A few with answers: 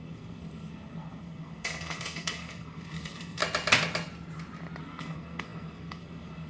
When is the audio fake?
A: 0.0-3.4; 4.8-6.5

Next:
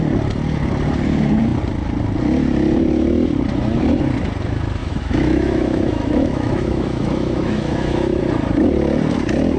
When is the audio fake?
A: 4.8-8.2

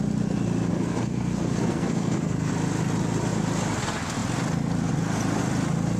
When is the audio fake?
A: 0.7-2.5

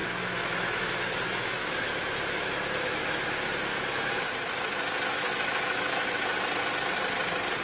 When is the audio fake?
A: 0.0-4.2; 5.1-6.2

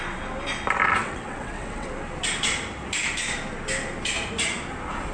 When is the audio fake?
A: 1.0-1.9